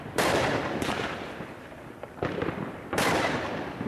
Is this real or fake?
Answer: fake